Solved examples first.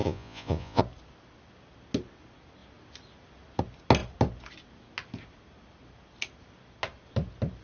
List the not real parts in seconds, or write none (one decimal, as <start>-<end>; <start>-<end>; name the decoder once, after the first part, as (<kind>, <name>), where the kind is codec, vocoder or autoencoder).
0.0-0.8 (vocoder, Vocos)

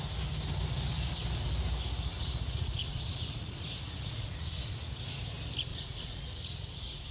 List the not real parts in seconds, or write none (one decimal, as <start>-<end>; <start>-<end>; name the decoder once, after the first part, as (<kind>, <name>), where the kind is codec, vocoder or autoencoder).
2.1-4.9 (vocoder, Vocos); 5.7-7.1

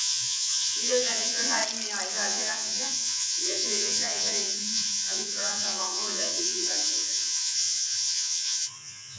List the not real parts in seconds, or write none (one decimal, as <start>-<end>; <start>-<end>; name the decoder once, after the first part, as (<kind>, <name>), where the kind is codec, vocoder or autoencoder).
0.0-1.6 (vocoder, Vocos); 2.1-9.2